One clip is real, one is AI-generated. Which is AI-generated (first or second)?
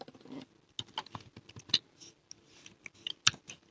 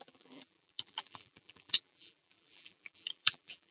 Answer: second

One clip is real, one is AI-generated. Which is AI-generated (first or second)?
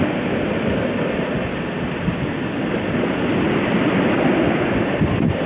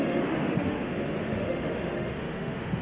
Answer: second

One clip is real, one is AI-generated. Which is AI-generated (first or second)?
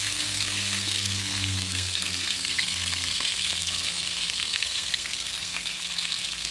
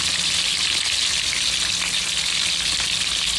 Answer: first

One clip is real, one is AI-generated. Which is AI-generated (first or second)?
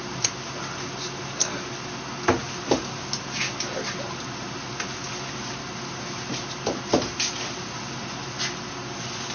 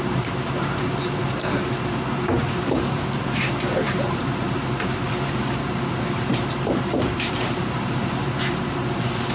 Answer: second